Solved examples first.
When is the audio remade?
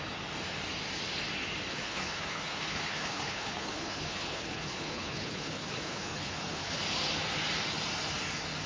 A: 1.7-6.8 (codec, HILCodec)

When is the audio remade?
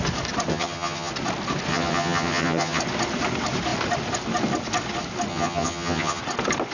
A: 0.5-1.1 (vocoder, HiFi-GAN); 1.7-2.8; 5.3-6.2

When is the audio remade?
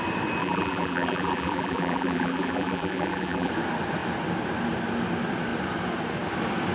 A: 0.4-3.5 (vocoder, BigVGAN v2)